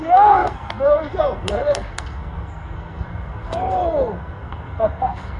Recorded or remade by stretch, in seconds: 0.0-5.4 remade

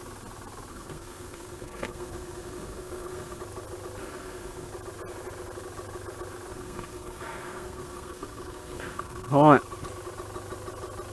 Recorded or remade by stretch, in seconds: 0.0-0.7 recorded; 0.7-3.4 remade; 3.4-4.0 recorded; 4.0-4.7 remade; 4.7-6.5 recorded; 6.5-9.3 remade; 9.3-11.1 recorded

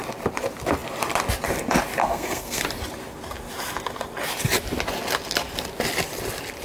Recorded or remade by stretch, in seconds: 0.0-2.0 recorded; 2.0-2.6 remade; 2.6-6.6 recorded

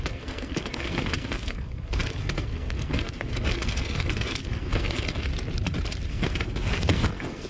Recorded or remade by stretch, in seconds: 0.0-5.3 remade; 5.3-6.1 recorded; 6.1-7.5 remade

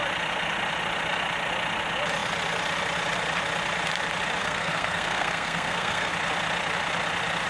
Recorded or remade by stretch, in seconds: 0.0-4.4 recorded; 4.4-6.1 remade; 6.1-7.5 recorded